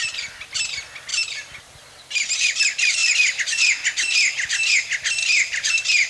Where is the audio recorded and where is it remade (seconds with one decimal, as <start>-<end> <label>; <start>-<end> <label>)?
0.0-1.1 recorded; 1.1-1.7 remade; 1.7-5.2 recorded; 5.2-6.1 remade